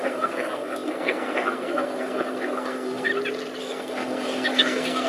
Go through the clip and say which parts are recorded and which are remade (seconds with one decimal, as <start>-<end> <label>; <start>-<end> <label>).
0.0-3.1 remade; 3.1-3.6 recorded; 3.6-5.1 remade